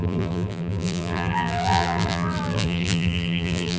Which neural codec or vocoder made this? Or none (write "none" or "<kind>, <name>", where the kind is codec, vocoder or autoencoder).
vocoder, BigVGAN v2